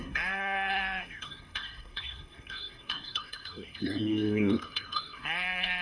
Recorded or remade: remade